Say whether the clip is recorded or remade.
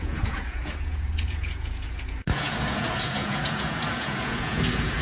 remade